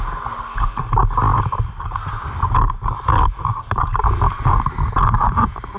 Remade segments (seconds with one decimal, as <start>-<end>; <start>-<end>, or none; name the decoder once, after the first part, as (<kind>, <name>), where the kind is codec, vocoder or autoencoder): 1.3-4.4 (vocoder, BigVGAN v2)